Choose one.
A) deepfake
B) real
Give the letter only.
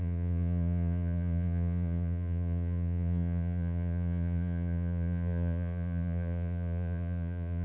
A